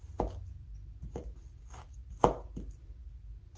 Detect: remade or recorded recorded